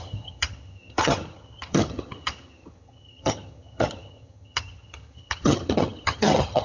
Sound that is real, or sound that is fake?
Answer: fake